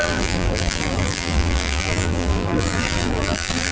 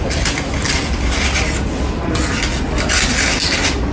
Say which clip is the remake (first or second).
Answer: first